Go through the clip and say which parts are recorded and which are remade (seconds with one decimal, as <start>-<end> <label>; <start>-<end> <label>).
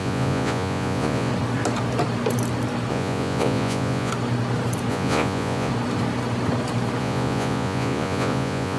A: 0.0-1.3 remade; 1.3-2.9 recorded; 2.9-4.1 remade; 4.1-4.9 recorded; 4.9-5.7 remade; 5.7-7.0 recorded; 7.0-8.8 remade